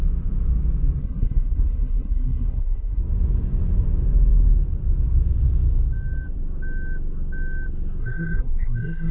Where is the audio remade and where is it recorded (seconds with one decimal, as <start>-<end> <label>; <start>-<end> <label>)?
0.0-1.0 recorded; 1.0-3.0 remade; 3.0-8.0 recorded; 8.0-9.1 remade